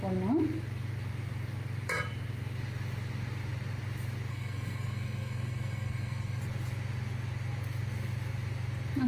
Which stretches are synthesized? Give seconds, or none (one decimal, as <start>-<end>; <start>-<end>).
4.3-6.4